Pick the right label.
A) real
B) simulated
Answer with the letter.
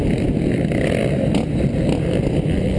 A